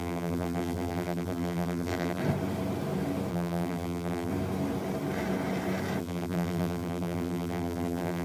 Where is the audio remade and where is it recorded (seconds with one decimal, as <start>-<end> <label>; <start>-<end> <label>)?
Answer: 0.0-2.2 remade; 2.2-3.3 recorded; 3.3-4.3 remade; 4.3-6.0 recorded; 6.0-8.2 remade